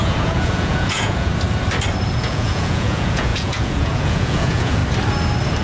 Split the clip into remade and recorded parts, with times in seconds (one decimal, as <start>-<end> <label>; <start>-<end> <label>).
0.0-1.3 remade; 1.3-2.2 recorded; 2.2-4.8 remade; 4.8-5.6 recorded